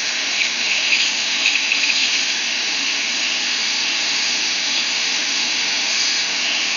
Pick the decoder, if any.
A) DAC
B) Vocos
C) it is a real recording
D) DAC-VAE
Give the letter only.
D